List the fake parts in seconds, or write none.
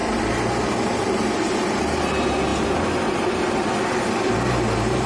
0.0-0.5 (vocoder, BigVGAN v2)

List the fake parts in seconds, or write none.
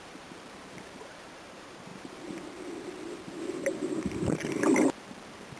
0.0-5.6 (vocoder, BigVGAN v2)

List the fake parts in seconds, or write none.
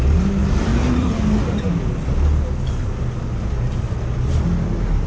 0.7-1.5 (vocoder, BigVGAN v2)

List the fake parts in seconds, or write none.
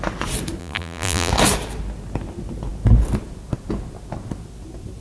0.6-1.3 (vocoder, BigVGAN v2)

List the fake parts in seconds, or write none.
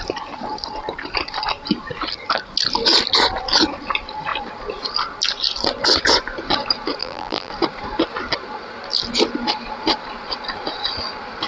7.0-7.5 (vocoder, BigVGAN v2)